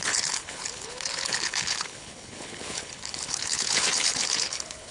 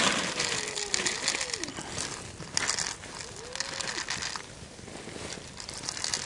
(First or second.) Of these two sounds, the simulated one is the first